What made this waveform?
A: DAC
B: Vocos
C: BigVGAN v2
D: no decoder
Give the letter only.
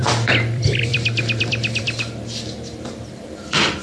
C